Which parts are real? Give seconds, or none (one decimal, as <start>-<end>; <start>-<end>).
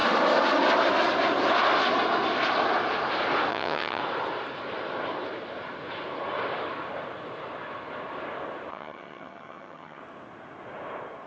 0.0-3.5; 4.0-8.7; 10.0-11.3